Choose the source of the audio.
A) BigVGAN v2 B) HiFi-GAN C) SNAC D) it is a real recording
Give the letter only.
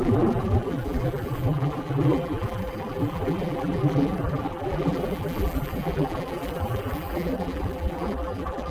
A